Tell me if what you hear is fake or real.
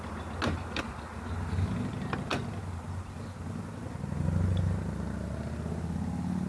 real